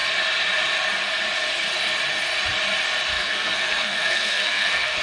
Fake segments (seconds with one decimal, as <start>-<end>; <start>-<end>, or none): 3.1-5.0